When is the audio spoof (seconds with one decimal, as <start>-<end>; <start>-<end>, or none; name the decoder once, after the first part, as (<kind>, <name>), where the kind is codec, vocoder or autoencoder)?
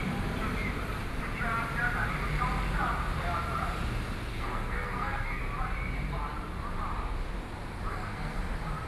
4.3-5.4 (codec, SNAC); 7.9-8.4